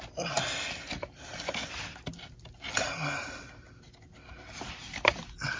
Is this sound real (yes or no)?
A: yes